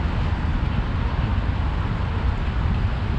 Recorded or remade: recorded